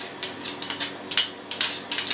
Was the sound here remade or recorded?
recorded